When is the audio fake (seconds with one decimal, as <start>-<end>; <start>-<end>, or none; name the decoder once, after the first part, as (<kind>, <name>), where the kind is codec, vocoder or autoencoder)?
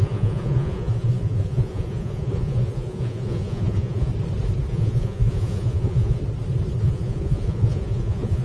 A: 0.0-4.1 (vocoder, Vocos); 4.7-6.2; 6.8-8.4